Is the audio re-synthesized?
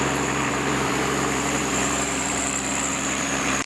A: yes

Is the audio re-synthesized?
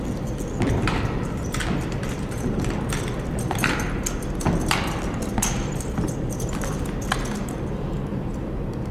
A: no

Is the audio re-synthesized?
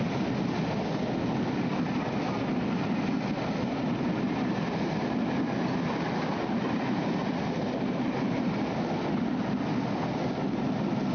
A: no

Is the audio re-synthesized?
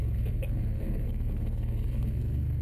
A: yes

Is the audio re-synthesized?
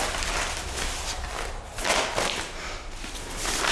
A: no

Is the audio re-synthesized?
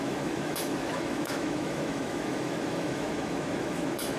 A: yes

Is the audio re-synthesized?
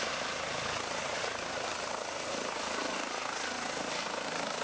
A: no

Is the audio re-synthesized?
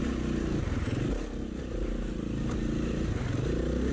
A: no